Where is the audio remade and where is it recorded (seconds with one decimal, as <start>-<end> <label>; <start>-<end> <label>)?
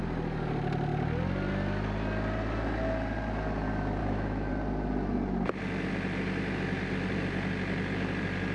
0.0-4.0 recorded; 4.0-4.5 remade; 4.5-8.5 recorded